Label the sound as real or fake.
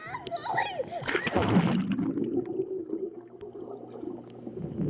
real